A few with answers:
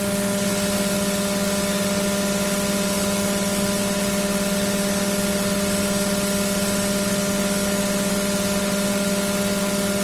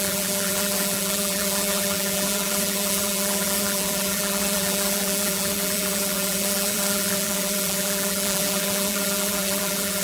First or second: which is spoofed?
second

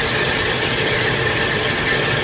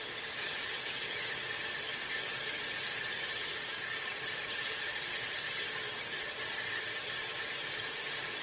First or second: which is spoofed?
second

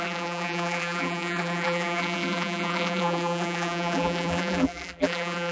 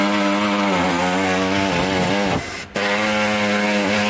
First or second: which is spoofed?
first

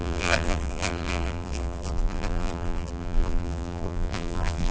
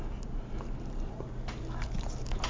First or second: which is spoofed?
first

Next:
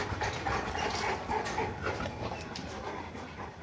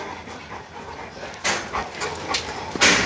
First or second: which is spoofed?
first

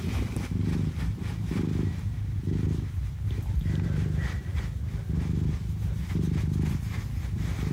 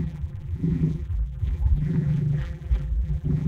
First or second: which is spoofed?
second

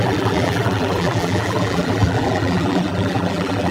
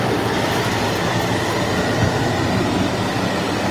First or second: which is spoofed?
first